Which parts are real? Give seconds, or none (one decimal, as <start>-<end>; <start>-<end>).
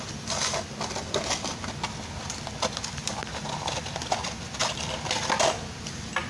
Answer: 0.0-6.3